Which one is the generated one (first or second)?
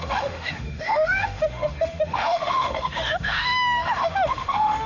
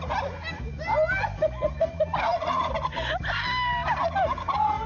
first